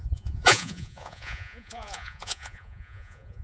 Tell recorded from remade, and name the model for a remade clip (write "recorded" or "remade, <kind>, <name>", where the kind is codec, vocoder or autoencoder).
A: remade, vocoder, Vocos